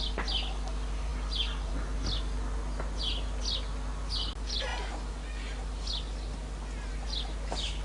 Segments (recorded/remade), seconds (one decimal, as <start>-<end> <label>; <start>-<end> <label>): 0.0-7.8 recorded